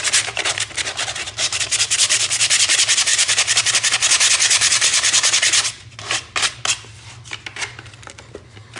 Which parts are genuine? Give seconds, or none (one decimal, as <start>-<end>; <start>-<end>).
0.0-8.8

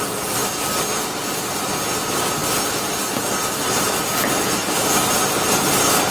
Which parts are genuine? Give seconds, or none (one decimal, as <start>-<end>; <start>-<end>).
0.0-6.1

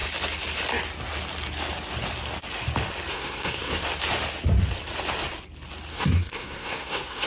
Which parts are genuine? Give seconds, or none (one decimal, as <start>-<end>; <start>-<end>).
0.0-3.1; 3.8-5.9

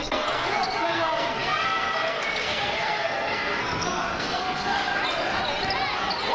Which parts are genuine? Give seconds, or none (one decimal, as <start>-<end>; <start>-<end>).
4.9-6.3

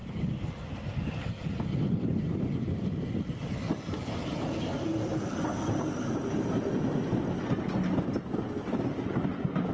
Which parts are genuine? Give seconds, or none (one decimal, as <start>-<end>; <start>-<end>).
0.0-9.7

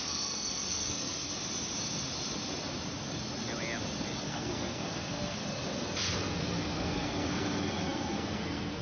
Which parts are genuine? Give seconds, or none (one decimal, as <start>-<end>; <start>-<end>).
1.3-4.2; 5.4-6.4

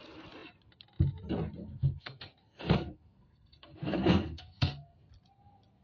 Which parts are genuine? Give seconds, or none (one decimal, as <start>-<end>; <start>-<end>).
0.0-1.6; 5.1-5.8

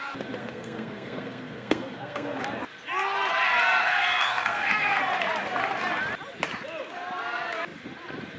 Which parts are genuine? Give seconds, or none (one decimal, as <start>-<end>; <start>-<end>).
0.0-0.4; 2.4-3.8; 5.0-8.4